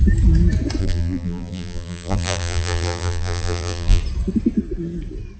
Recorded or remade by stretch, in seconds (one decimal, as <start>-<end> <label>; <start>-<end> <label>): 0.0-0.8 recorded; 0.8-4.0 remade; 4.0-5.4 recorded